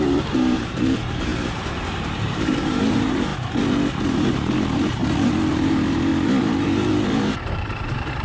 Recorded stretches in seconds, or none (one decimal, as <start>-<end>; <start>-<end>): 3.3-4.0; 5.0-5.5; 6.1-6.6